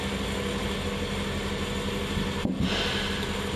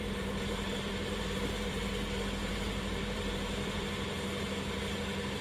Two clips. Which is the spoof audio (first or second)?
second